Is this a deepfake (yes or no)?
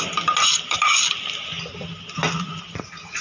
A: no